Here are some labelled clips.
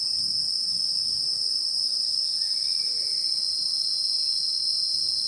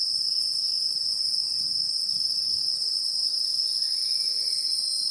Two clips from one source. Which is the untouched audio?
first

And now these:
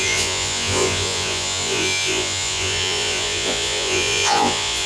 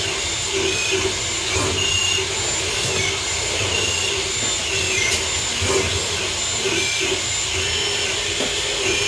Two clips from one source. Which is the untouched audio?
second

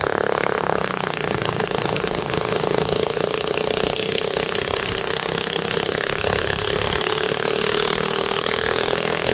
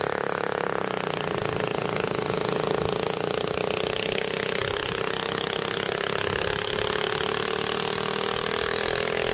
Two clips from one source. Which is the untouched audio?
second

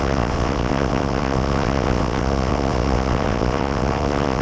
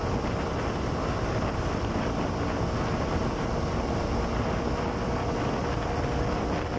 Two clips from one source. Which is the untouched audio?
second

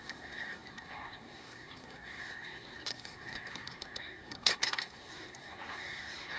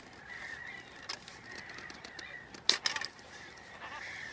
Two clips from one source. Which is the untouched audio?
second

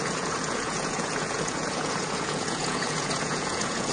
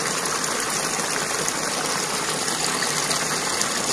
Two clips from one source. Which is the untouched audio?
second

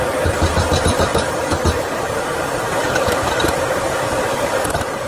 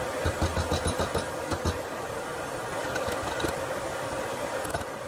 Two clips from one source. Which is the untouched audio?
second